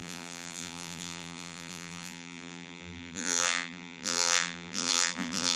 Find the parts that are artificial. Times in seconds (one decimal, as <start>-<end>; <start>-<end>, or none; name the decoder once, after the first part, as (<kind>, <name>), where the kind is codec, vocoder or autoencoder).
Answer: 0.0-5.6 (vocoder, BigVGAN v2)